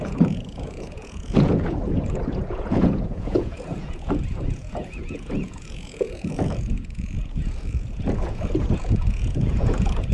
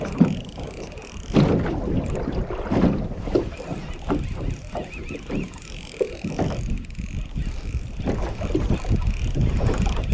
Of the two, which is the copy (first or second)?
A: first